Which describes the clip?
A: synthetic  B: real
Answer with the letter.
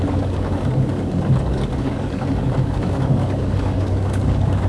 A